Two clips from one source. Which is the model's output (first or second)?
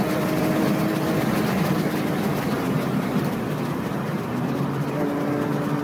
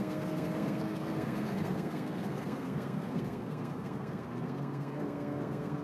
second